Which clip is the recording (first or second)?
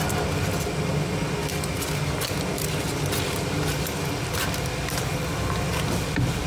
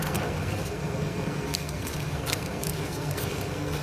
first